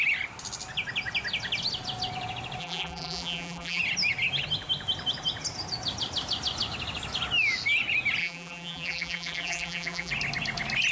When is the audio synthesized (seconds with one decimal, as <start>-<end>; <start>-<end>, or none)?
2.6-3.8; 8.2-10.1